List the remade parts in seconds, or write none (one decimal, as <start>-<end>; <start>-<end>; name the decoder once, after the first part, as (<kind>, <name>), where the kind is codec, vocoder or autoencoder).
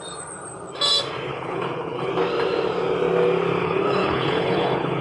1.3-2.1 (codec, HILCodec); 3.6-5.0